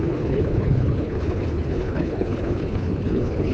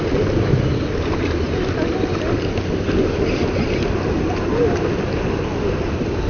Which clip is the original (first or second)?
second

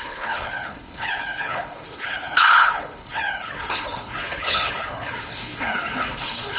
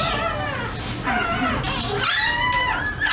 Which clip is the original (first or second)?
second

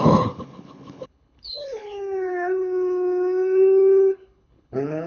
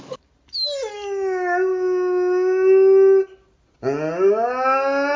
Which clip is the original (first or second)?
second